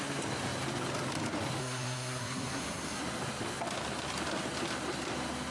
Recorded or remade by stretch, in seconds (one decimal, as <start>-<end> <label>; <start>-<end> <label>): 0.0-1.6 recorded; 1.6-3.0 remade; 3.0-5.5 recorded